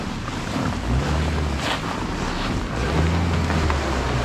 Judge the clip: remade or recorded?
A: recorded